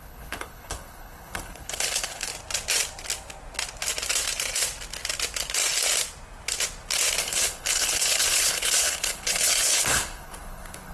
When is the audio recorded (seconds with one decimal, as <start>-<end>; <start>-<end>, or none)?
2.3-7.2